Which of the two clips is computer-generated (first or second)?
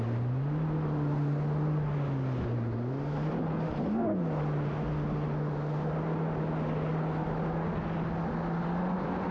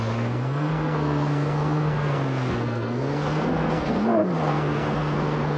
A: second